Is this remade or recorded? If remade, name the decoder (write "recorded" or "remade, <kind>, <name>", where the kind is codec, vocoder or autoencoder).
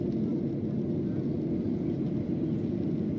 recorded